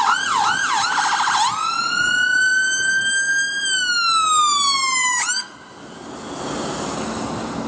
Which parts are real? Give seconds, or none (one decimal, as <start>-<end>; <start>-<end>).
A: 0.0-7.7